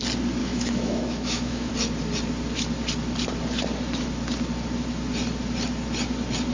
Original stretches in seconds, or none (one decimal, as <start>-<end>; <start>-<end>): 0.0-0.4; 1.7-6.5